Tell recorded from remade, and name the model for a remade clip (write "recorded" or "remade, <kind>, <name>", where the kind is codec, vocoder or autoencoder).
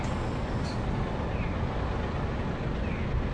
recorded